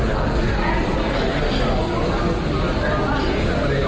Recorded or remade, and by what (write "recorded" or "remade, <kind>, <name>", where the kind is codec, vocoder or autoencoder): recorded